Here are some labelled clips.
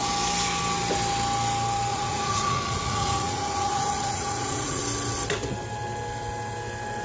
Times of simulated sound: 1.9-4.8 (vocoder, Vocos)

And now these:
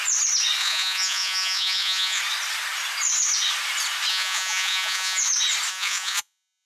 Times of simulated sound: 0.6-2.2 (vocoder, Vocos); 4.1-5.2; 5.7-6.7

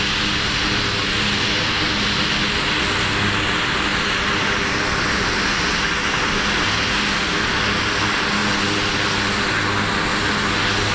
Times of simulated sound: none

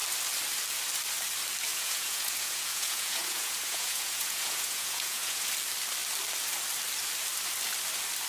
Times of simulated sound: 1.7-5.4 (vocoder, Vocos)

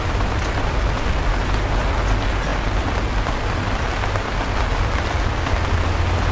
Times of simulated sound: none

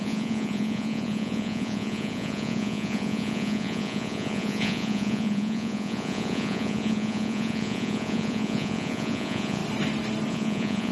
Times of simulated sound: 0.0-9.6 (vocoder, Vocos); 10.3-10.9